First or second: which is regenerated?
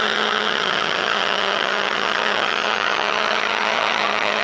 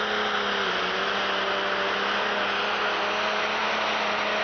first